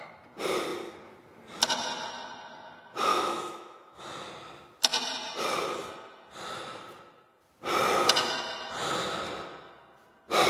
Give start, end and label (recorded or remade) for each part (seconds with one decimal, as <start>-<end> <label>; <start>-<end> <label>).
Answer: 0.0-3.1 recorded; 3.1-4.0 remade; 4.0-10.5 recorded